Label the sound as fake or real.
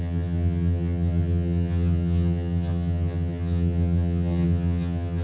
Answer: fake